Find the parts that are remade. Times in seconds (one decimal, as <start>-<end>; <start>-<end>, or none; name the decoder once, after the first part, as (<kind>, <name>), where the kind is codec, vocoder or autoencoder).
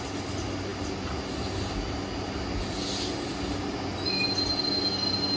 none